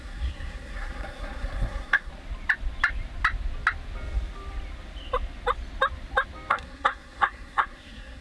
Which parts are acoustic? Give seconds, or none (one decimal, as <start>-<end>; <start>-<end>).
2.1-6.5